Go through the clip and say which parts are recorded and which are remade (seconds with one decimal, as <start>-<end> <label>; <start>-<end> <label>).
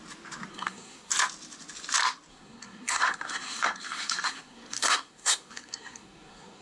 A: 0.0-0.5 recorded; 0.5-1.1 remade; 1.1-2.3 recorded; 2.3-6.6 remade